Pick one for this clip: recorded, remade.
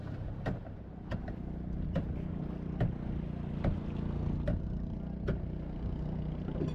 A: recorded